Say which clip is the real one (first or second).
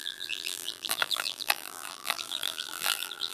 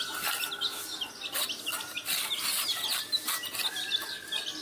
second